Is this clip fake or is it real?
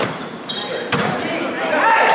fake